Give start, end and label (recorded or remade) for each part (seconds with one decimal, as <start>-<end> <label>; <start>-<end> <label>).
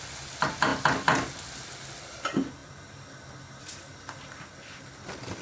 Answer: 0.0-5.4 recorded